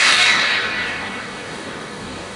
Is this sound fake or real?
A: fake